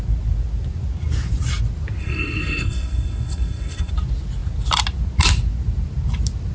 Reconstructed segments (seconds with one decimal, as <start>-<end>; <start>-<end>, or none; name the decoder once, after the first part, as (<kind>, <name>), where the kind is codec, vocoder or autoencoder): 2.0-3.9 (codec, SNAC)